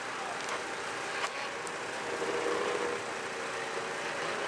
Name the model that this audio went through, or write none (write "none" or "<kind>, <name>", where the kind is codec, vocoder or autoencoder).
none